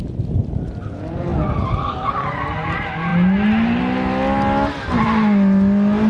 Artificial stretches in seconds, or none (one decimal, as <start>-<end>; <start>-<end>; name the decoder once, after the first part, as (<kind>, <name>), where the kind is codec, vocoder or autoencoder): none